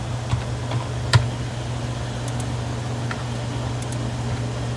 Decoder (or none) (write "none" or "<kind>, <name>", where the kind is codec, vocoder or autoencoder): none